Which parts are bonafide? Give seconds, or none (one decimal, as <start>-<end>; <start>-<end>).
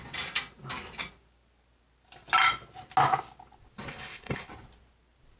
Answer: 0.0-3.9; 4.5-5.4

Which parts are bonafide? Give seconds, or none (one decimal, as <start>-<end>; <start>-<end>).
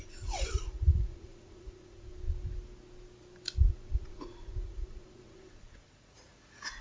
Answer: 2.1-3.7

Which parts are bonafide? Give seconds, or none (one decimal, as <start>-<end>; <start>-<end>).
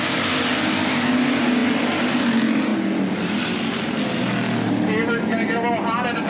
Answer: 0.0-6.3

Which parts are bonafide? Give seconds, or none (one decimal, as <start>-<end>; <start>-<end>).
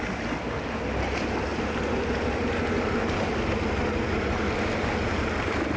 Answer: 0.0-5.8